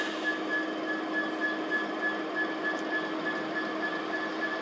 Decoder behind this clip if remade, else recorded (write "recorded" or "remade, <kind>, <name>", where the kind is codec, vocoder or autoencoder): recorded